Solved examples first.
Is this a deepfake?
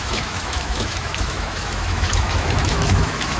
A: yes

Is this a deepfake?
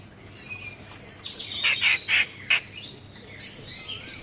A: no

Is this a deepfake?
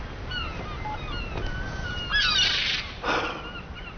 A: no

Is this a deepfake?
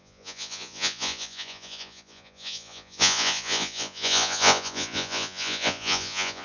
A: yes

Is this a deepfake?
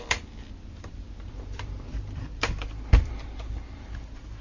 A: yes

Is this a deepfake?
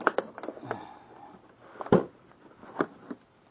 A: no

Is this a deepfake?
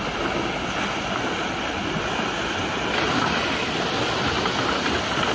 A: no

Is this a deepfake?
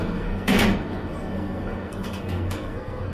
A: yes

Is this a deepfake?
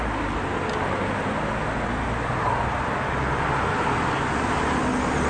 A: no